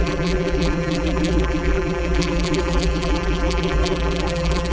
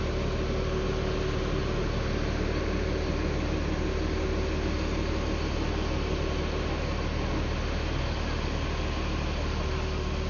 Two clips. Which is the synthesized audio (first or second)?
first